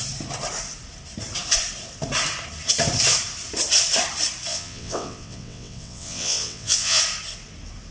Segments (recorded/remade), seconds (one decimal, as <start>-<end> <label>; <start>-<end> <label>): 0.0-4.5 recorded; 4.5-7.0 remade; 7.0-7.9 recorded